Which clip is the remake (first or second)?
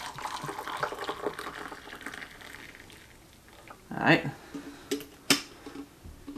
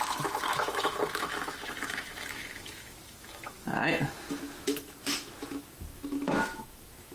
second